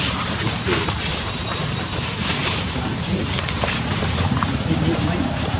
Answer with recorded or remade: remade